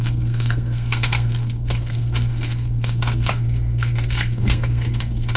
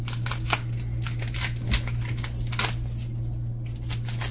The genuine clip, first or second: second